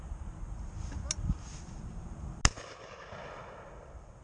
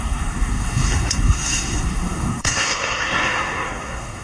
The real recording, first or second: first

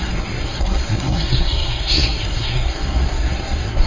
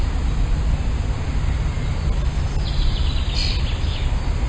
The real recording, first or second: second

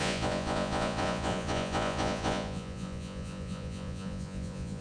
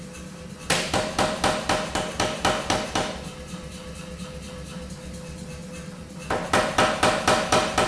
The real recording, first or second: second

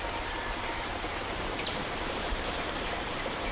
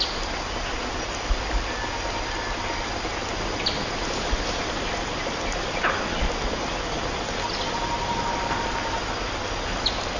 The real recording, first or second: second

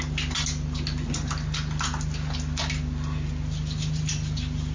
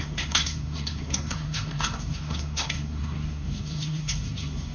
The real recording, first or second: first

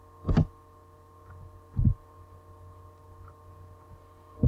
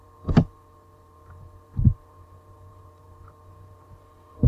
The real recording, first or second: first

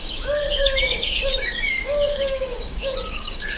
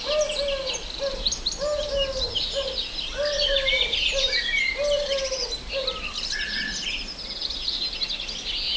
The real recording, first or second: second